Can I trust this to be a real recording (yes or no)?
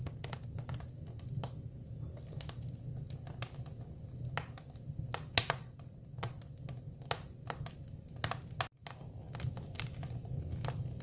yes